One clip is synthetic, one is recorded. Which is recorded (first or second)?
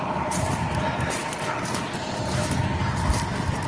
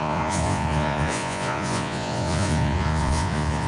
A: first